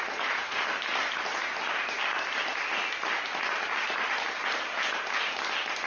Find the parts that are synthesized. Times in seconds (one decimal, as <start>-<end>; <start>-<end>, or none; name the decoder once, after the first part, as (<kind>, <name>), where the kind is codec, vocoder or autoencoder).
0.0-0.6 (vocoder, Vocos)